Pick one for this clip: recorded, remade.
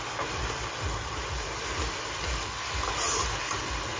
recorded